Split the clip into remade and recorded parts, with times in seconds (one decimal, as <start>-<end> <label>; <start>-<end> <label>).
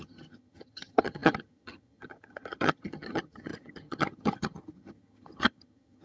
0.0-6.0 remade